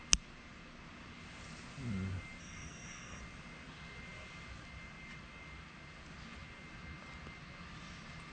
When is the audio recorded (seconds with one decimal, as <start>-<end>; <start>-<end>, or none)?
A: 0.0-2.4; 3.2-8.3